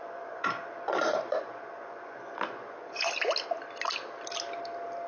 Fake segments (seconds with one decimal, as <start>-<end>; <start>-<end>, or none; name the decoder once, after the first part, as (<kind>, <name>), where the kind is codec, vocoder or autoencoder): 0.0-3.1 (vocoder, Vocos)